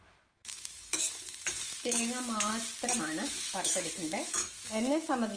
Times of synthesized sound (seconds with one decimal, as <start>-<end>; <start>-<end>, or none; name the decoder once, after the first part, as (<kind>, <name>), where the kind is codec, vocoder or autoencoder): 0.0-2.5 (autoencoder, DAC-VAE); 3.0-5.4